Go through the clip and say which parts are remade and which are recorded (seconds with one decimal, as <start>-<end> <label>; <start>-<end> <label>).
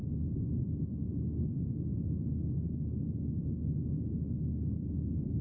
0.0-5.4 recorded